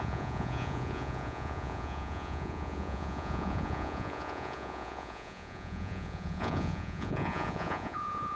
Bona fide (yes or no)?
no